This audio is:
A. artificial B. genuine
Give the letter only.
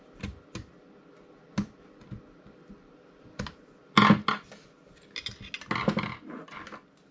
B